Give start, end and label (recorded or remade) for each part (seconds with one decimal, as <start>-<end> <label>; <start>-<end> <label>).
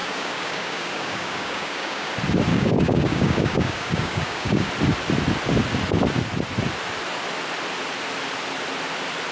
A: 0.0-2.1 remade; 2.1-2.5 recorded; 2.5-4.7 remade; 4.7-9.3 recorded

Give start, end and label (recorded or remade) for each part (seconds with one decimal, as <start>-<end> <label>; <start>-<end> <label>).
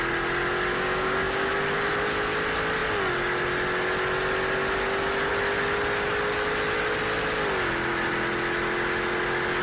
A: 0.0-0.7 recorded; 0.7-1.5 remade; 1.5-9.6 recorded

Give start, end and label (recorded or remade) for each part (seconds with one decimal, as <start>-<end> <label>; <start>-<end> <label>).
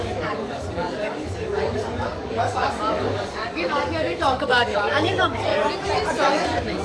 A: 0.0-5.5 remade; 5.5-6.3 recorded; 6.3-6.8 remade